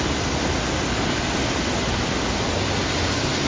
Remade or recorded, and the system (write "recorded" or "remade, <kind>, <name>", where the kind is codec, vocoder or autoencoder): recorded